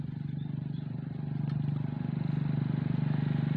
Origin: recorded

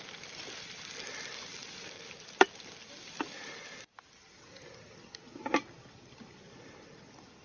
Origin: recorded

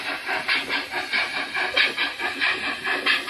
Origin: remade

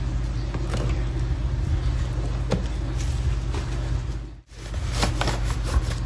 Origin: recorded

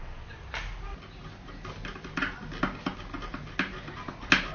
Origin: recorded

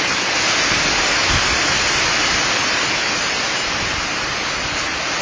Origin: recorded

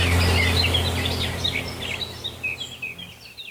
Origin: recorded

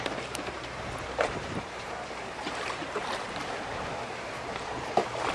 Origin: remade